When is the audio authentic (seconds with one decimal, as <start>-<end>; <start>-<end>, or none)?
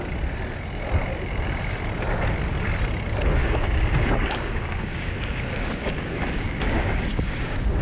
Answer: 0.0-3.4